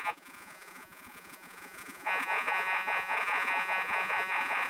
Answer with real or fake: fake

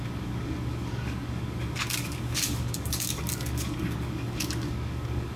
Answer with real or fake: fake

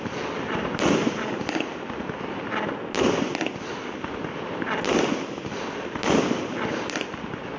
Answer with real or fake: real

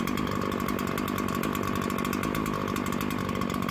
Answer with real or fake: real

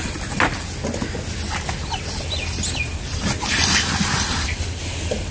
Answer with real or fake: real